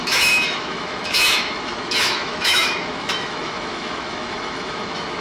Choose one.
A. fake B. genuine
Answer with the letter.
A